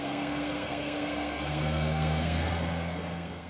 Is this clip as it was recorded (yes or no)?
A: no